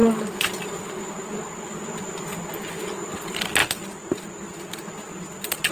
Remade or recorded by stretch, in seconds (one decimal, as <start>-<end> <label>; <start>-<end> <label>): 0.0-5.7 recorded